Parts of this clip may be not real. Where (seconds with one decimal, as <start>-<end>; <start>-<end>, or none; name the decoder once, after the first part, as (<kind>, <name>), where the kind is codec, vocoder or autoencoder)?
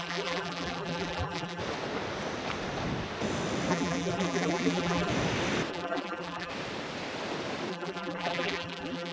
0.0-1.6 (vocoder, BigVGAN v2); 3.7-5.1; 5.7-6.5; 7.7-9.1